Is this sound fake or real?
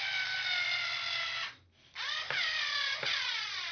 real